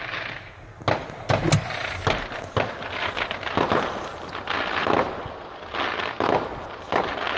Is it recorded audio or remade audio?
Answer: recorded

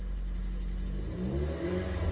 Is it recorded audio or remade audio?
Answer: recorded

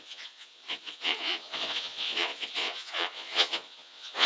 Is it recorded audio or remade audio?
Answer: remade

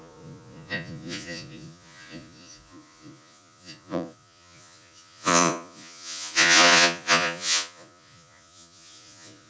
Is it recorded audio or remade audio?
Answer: remade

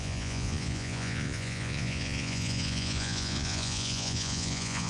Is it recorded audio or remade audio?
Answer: remade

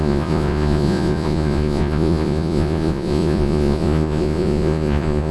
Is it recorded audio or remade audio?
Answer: remade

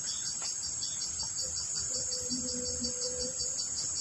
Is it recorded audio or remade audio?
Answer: recorded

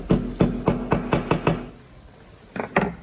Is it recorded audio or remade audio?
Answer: recorded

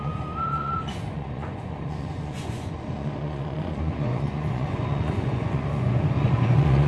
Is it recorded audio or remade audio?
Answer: remade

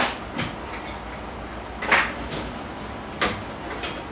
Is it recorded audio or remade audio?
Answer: recorded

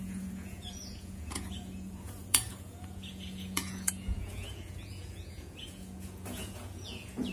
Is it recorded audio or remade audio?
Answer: remade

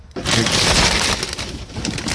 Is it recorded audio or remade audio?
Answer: recorded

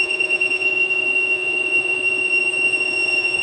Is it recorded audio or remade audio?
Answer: remade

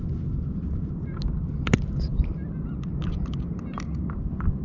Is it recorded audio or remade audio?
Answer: recorded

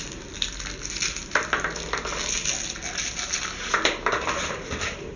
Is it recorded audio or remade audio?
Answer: recorded